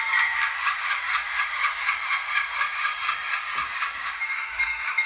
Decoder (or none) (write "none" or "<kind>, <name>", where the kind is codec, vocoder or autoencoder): codec, DAC